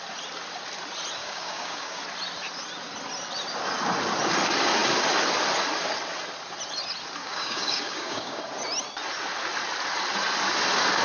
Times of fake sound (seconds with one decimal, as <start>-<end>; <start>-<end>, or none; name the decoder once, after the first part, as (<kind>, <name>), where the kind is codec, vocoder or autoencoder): 1.2-2.0 (codec, DAC); 7.2-8.4